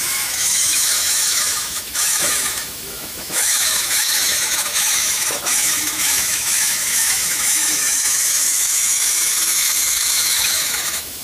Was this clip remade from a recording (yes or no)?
yes